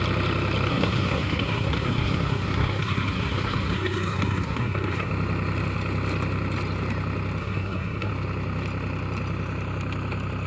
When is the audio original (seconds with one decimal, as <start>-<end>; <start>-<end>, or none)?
0.0-0.7; 5.1-7.4; 8.1-10.5